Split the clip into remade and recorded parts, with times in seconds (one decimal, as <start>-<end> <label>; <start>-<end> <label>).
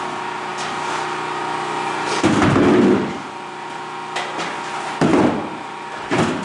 0.0-6.4 recorded